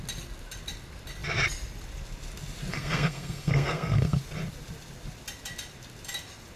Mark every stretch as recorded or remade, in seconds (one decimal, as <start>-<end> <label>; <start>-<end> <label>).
0.0-2.7 recorded; 2.7-4.2 remade; 4.2-6.6 recorded